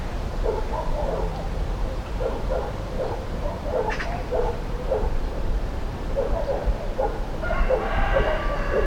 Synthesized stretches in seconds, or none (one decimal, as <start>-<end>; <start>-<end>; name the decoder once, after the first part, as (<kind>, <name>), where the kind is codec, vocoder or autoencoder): 1.3-6.6 (vocoder, BigVGAN v2)